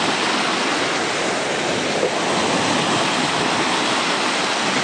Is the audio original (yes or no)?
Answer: yes